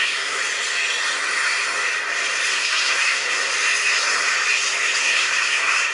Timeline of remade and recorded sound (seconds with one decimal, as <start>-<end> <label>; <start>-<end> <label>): 0.0-0.4 remade; 0.4-2.5 recorded; 2.5-3.5 remade; 3.5-5.0 recorded; 5.0-5.9 remade